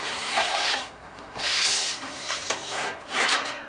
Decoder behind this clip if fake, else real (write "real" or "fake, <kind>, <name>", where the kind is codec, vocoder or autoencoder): fake, codec, SNAC